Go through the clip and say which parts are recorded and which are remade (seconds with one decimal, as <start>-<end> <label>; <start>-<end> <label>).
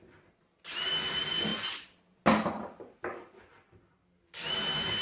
0.0-5.0 recorded